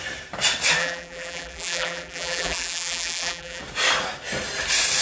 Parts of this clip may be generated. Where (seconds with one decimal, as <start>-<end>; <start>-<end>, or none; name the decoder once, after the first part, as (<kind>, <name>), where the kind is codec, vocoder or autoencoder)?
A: 0.8-3.6 (vocoder, BigVGAN v2)

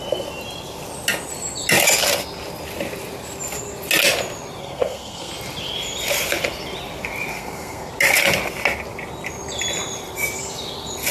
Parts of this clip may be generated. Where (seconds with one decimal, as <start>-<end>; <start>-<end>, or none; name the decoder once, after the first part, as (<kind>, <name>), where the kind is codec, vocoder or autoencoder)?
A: 4.6-5.3 (codec, SNAC); 7.3-7.9

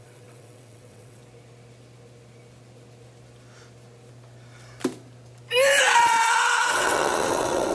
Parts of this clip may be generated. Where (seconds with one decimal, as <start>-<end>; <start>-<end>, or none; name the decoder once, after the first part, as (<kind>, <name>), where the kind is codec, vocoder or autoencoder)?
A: 0.0-1.2 (vocoder, WaveNeXt); 5.8-7.7

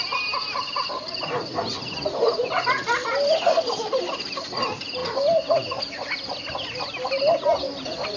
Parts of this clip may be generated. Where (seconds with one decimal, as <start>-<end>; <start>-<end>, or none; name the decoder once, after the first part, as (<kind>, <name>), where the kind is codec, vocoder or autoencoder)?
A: none

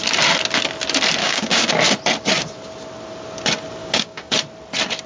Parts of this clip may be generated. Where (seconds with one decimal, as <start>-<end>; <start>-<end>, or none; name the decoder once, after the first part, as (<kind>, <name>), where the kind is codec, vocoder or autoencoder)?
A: 1.2-1.7 (codec, DAC); 3.8-4.3

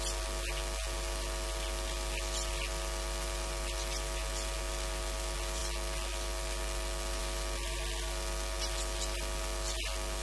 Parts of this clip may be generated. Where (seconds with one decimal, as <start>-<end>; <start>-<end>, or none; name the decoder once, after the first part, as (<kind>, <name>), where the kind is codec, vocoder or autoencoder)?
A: none

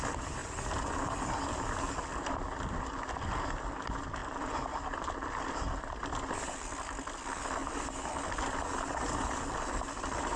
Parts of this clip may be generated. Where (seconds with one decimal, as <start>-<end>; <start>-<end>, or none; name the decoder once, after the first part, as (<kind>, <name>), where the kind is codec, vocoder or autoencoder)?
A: 0.4-3.1 (vocoder, BigVGAN v2); 7.6-8.1

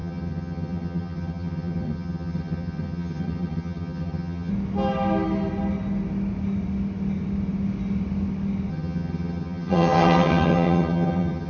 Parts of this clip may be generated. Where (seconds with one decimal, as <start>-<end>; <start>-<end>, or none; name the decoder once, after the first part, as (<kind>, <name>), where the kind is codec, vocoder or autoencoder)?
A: 0.0-4.5 (vocoder, HiFi-GAN); 8.7-11.5